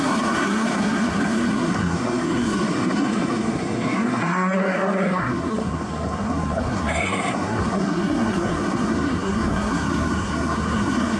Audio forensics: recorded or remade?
remade